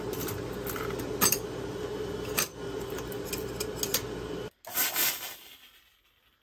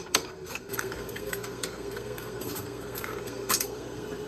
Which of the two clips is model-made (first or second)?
second